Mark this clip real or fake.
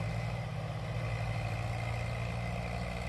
real